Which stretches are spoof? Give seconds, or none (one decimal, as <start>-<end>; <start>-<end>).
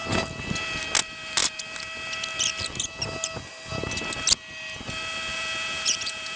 5.3-6.4